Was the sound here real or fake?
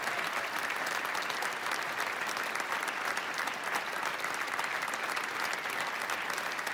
real